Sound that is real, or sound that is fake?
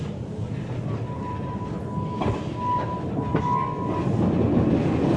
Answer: real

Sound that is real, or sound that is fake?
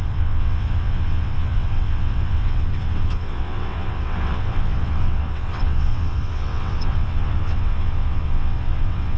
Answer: fake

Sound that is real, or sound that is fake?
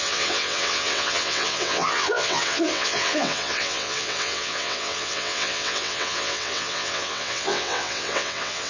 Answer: fake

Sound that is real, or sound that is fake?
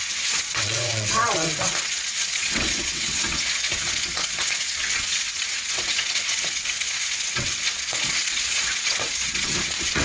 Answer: fake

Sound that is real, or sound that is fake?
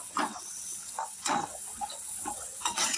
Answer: fake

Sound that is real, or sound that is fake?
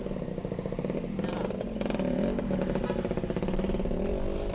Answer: real